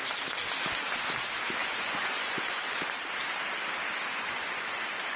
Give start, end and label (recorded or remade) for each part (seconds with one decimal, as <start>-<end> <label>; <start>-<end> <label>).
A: 0.0-1.6 recorded; 1.6-2.8 remade; 2.8-4.1 recorded; 4.1-4.8 remade; 4.8-5.2 recorded